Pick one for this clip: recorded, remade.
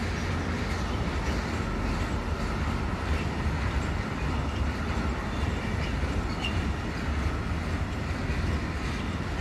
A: recorded